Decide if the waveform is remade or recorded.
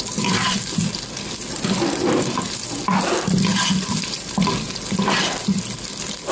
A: recorded